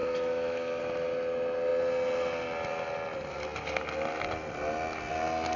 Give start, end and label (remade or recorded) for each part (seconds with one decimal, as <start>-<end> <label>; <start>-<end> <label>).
0.0-0.8 remade; 0.8-5.6 recorded